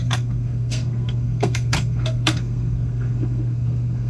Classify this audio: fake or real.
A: fake